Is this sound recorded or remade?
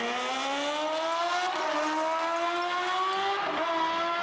recorded